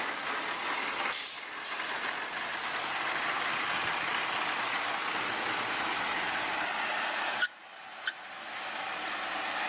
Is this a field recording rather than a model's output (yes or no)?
yes